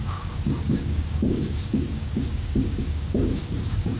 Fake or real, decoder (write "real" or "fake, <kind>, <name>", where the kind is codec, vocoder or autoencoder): fake, codec, DAC